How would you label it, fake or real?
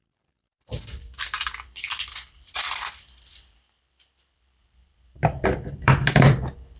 fake